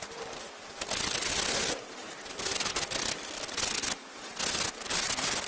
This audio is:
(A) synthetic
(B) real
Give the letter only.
B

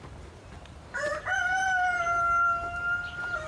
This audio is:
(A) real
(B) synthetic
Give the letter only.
B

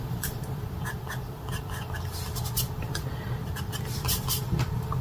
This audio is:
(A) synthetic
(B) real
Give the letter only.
A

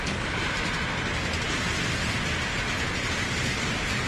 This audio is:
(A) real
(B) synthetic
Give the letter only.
A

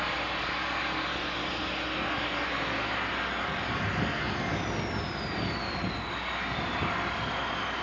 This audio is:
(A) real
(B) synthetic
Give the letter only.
A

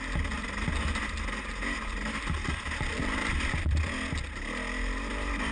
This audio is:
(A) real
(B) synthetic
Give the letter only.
A